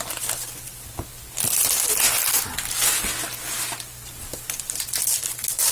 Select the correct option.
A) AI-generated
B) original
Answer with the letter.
B